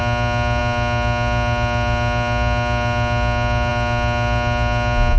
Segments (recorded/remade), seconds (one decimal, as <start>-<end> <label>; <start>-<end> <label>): 0.0-5.2 recorded